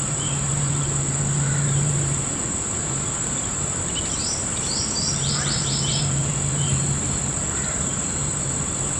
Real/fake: fake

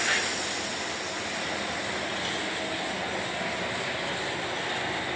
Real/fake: real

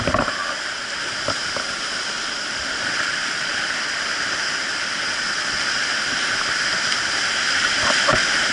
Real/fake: real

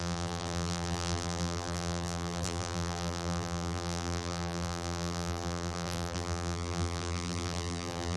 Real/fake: fake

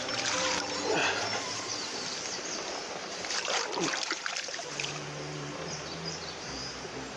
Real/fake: fake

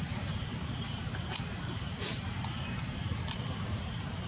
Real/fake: fake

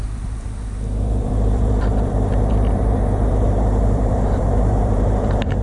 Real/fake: fake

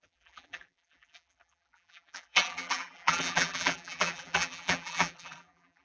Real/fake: fake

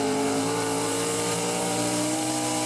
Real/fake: fake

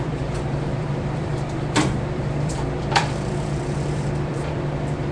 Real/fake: fake